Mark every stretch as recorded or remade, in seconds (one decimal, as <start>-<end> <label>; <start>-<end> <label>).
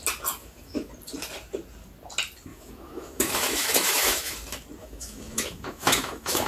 0.0-0.4 recorded; 0.4-0.9 remade; 0.9-2.5 recorded; 2.5-4.3 remade; 4.3-4.8 recorded; 4.8-6.5 remade